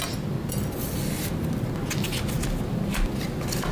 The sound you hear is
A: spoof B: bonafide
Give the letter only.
B